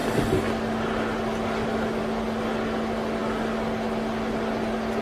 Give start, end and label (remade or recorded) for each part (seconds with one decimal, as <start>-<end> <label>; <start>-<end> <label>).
0.0-5.0 recorded